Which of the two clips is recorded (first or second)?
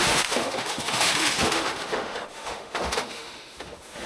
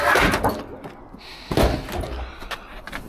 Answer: second